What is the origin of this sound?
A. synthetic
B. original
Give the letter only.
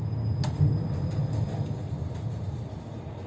B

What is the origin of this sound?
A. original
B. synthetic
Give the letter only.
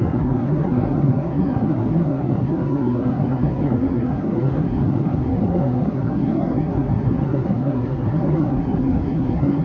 B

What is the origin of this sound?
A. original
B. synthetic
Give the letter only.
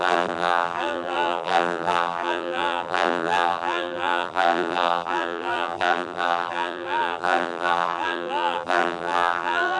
B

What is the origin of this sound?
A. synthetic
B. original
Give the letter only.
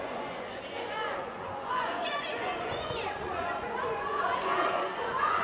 A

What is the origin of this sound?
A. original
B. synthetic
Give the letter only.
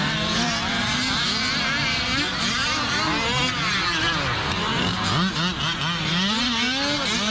A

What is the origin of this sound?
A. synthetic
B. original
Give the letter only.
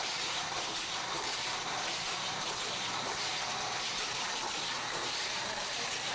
A